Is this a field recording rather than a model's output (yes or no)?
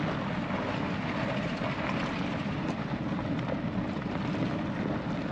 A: yes